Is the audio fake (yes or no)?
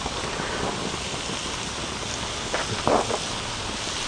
no